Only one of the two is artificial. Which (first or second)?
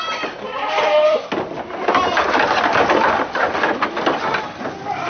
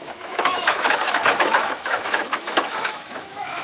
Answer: second